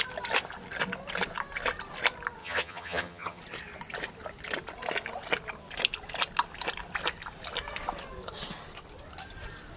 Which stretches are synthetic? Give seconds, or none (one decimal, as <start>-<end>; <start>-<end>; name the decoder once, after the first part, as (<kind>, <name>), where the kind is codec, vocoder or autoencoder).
2.4-3.4 (vocoder, HiFi-GAN)

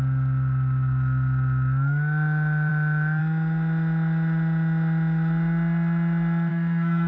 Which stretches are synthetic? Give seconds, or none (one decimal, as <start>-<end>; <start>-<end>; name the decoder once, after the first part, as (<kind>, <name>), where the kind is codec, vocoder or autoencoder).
6.5-7.1 (codec, SNAC)

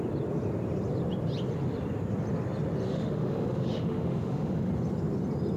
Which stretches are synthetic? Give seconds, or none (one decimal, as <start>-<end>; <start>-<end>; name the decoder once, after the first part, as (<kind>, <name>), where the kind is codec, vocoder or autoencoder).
2.9-4.7 (autoencoder, DAC-VAE)

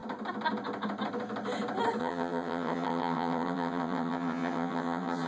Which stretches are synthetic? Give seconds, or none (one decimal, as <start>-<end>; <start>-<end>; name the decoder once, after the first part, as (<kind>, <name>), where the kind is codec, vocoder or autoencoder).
2.0-5.3 (vocoder, HiFi-GAN)